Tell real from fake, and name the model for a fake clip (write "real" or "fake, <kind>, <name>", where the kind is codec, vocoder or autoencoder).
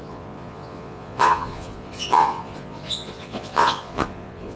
fake, vocoder, Vocos